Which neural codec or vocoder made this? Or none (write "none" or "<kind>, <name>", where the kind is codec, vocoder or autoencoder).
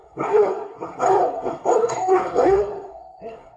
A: codec, SNAC